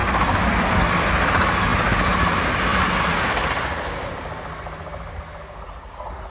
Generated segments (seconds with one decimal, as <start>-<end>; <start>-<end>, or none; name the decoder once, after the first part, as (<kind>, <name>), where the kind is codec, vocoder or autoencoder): none